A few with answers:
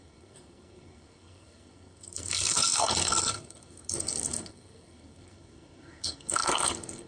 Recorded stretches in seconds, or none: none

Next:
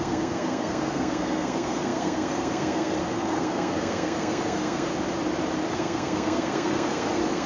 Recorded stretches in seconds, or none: 4.9-5.7

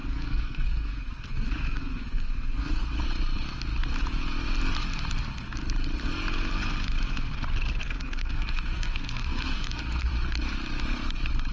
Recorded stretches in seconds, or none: 3.0-7.8; 10.1-11.5